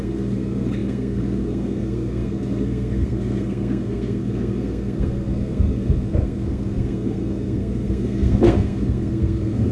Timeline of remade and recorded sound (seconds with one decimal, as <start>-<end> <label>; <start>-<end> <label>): 0.0-9.7 remade